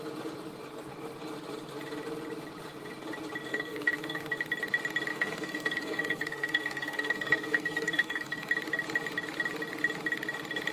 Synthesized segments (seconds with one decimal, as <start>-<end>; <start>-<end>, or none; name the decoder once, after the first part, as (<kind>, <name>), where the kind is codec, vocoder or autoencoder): 3.5-4.4 (codec, SNAC); 5.1-8.5